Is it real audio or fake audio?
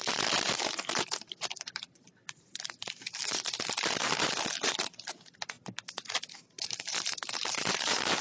fake